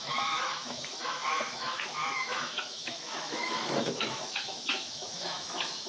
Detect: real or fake fake